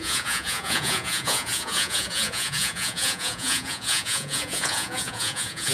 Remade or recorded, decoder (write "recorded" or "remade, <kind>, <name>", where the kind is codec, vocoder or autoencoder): remade, vocoder, Vocos